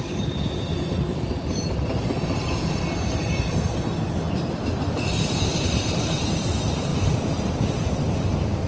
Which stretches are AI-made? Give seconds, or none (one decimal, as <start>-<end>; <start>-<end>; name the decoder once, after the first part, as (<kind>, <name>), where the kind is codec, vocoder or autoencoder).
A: 0.0-0.7 (vocoder, BigVGAN v2); 4.5-8.7